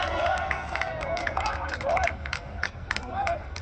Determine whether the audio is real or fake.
fake